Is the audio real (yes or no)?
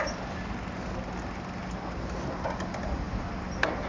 yes